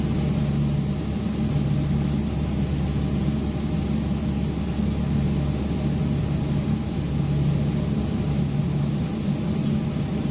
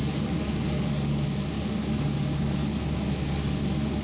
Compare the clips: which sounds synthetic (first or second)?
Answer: second